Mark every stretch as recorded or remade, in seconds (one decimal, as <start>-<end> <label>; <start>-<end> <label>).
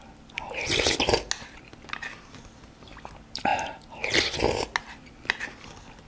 0.0-6.1 recorded